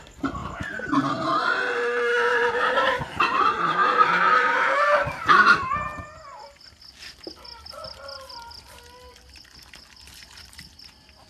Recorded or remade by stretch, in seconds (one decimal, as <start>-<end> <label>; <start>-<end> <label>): 0.0-0.4 recorded; 0.4-1.6 remade; 1.6-2.3 recorded; 2.3-5.7 remade; 5.7-11.3 recorded